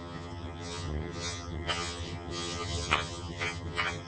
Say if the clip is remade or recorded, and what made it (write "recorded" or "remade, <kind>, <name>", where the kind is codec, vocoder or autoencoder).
remade, vocoder, HiFi-GAN